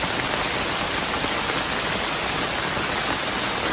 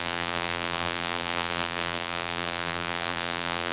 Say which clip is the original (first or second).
first